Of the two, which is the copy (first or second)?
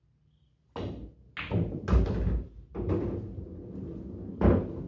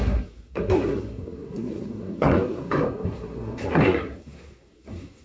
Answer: second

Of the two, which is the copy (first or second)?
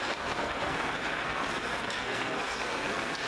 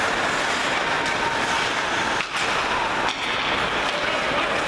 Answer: first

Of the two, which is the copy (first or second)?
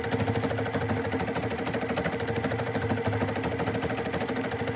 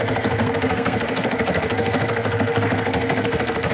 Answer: second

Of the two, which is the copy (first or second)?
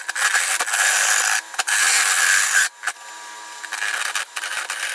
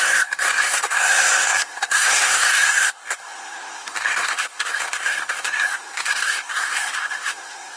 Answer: second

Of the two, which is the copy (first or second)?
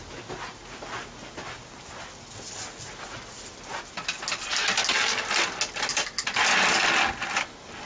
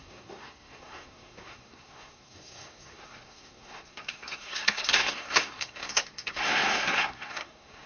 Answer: second